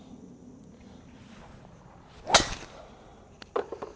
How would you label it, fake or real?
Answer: real